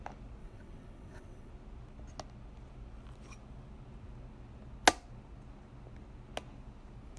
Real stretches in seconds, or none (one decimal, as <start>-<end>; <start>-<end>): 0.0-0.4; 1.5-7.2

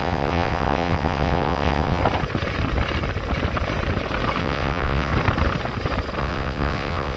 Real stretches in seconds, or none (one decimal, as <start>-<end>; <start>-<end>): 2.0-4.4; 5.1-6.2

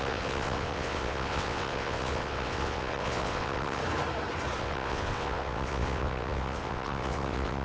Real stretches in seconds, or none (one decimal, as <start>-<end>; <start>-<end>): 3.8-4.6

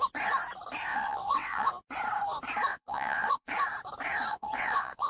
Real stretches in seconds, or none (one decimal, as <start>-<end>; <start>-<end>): 0.0-0.9; 1.7-2.7; 3.5-4.3

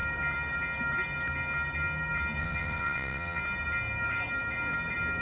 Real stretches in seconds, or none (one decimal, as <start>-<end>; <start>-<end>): 0.0-2.4; 3.4-5.2

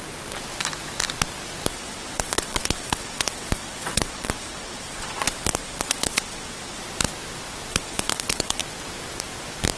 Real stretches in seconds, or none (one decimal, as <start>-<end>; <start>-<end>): 0.0-1.7; 6.8-7.7; 8.6-9.8